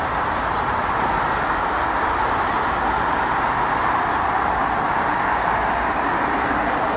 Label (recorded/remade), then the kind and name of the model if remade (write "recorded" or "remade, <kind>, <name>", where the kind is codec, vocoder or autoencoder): recorded